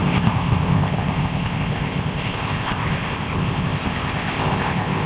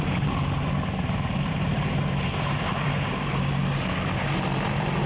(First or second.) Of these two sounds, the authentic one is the second